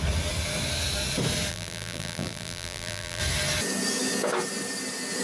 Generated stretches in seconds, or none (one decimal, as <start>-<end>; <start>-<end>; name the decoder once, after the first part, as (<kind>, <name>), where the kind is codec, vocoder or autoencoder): 1.5-3.2 (vocoder, BigVGAN v2)